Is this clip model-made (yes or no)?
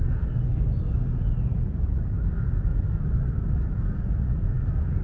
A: no